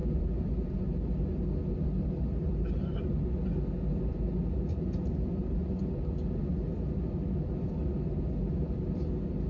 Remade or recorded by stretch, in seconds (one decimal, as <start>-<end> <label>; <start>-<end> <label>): 0.0-9.5 recorded